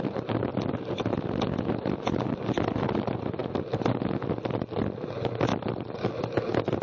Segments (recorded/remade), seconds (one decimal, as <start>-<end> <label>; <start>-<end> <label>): 0.0-6.8 recorded